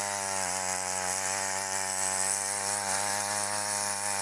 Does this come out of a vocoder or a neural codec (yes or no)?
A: no